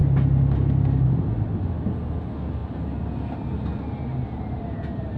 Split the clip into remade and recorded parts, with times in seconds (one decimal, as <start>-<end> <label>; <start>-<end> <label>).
0.0-5.2 recorded